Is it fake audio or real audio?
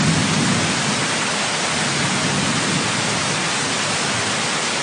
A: real